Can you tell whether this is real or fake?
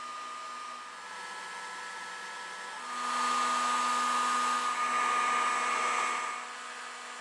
real